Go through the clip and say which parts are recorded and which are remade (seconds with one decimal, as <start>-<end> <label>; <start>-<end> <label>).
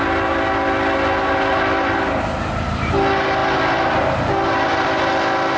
0.0-5.6 recorded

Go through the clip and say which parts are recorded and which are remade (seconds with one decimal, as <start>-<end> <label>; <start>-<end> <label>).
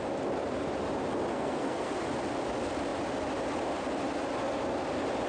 0.0-1.3 recorded; 1.3-1.9 remade; 1.9-5.3 recorded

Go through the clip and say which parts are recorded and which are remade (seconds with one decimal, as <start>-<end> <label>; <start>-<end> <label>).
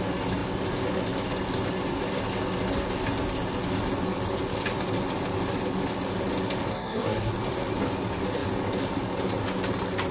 0.0-6.7 recorded; 6.7-7.3 remade; 7.3-10.1 recorded